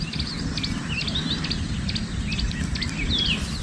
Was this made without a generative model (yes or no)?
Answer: yes